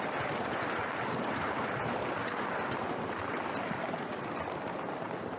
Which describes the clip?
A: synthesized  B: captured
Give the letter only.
B